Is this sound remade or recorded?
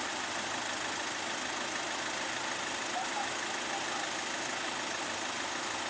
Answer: recorded